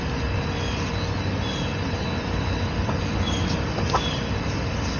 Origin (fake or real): real